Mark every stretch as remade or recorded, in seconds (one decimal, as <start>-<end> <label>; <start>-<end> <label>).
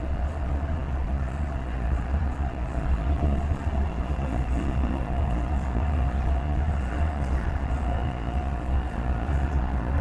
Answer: 0.0-10.0 remade